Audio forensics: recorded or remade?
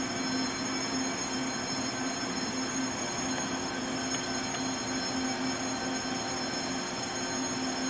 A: recorded